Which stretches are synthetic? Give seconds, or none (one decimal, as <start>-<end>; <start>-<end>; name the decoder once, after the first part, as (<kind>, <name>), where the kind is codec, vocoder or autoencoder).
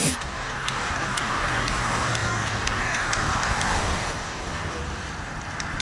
0.0-4.8 (codec, DAC)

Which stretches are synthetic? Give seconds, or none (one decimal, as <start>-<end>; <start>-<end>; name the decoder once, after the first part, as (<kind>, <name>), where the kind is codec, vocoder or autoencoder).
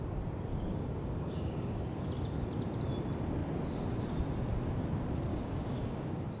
0.5-2.0 (codec, DAC); 5.3-6.0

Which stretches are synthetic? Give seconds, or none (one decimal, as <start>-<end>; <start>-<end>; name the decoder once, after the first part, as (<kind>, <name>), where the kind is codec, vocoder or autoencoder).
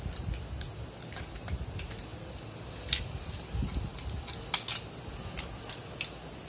none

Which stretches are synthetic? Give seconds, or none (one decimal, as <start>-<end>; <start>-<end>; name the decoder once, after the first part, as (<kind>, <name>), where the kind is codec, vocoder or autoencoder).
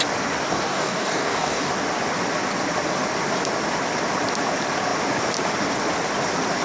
0.5-1.7 (codec, DAC)